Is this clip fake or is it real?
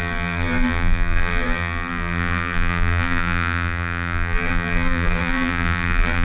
fake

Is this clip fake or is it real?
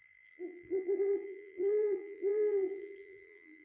fake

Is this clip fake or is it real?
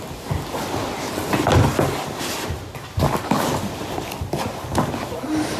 real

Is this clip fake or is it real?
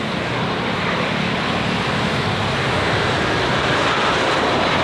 real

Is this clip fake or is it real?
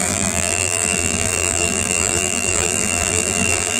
fake